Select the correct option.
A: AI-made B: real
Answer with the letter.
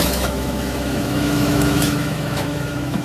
A